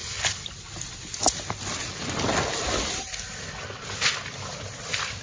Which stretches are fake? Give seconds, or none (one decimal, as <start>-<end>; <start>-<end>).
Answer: none